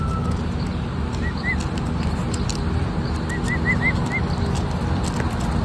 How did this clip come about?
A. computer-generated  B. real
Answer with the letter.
B